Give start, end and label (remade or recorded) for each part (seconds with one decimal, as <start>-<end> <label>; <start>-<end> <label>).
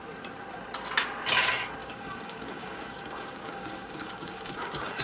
0.0-1.8 recorded; 1.8-5.0 remade